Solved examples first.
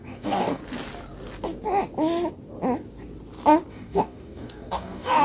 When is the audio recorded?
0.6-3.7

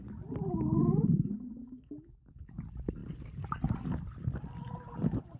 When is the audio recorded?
0.0-0.8; 2.2-5.4

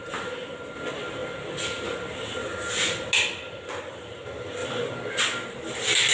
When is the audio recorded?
0.0-6.1

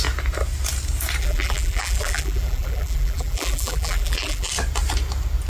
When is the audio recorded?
0.0-1.2; 4.5-5.5

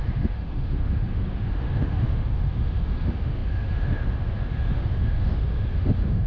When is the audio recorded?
none

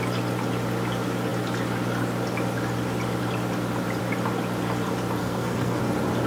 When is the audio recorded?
0.0-5.2; 5.8-6.3

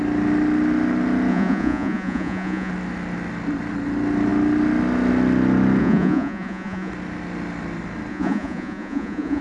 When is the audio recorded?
0.0-1.3; 2.7-5.8; 6.9-8.1